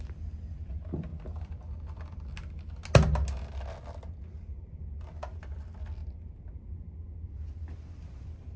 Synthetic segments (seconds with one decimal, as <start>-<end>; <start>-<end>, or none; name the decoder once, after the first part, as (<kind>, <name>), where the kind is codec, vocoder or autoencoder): none